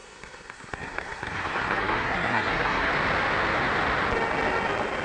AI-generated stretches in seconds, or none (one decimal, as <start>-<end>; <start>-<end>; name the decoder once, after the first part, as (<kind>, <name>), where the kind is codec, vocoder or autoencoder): 0.0-2.9 (codec, SNAC)

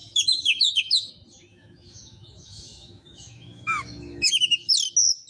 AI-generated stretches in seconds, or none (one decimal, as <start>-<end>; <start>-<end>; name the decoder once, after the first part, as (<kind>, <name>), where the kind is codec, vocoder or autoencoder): 0.0-1.1 (autoencoder, DAC-VAE); 1.5-4.7

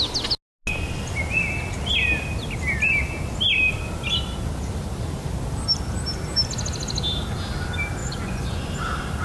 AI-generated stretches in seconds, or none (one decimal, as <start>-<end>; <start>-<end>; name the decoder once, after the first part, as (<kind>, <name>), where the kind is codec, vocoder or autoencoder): 8.0-8.7 (vocoder, Vocos)

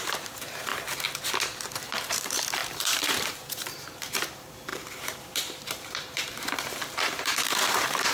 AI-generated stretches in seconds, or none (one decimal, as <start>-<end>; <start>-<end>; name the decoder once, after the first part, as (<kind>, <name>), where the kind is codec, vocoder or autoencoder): 0.0-0.7 (vocoder, BigVGAN v2); 1.7-8.1

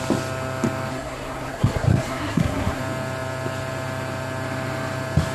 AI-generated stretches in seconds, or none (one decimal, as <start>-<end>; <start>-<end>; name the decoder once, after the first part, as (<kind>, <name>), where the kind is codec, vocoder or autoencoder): 0.9-2.8 (codec, SNAC)

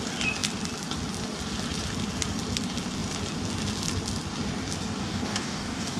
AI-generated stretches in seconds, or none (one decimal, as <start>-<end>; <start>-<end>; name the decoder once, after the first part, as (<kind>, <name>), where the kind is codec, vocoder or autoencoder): 5.0-6.0 (codec, DAC)

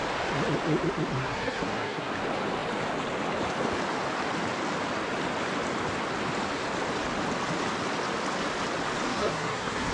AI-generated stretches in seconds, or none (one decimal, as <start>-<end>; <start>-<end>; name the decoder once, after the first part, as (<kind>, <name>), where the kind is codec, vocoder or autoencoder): 1.2-2.1 (codec, SNAC); 9.1-9.9